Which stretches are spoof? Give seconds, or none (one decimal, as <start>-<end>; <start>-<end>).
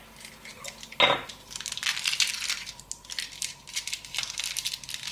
none